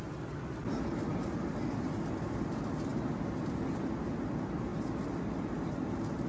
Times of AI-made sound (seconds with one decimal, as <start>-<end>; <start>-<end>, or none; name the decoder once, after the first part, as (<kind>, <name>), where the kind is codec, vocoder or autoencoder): none